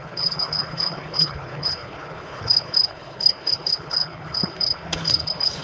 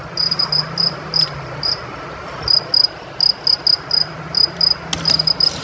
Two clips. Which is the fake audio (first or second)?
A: first